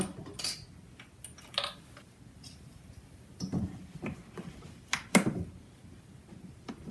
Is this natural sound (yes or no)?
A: yes